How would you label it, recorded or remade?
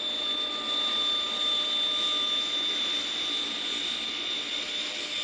recorded